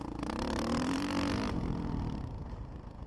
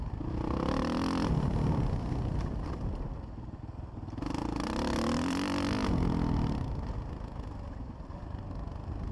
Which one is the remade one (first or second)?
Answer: first